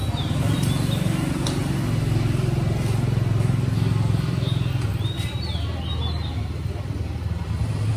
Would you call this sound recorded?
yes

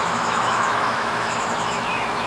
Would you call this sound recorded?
no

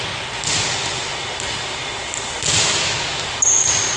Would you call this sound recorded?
yes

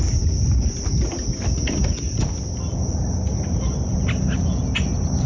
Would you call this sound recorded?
yes